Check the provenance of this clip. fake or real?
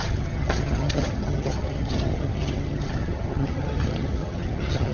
fake